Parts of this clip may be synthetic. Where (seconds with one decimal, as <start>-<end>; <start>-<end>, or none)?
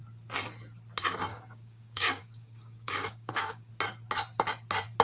1.3-3.7